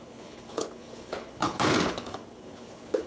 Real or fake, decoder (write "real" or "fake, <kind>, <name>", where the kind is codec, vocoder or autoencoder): fake, codec, HILCodec